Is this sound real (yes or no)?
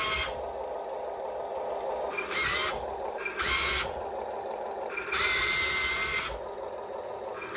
yes